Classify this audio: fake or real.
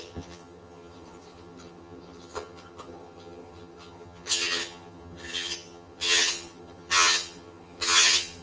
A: fake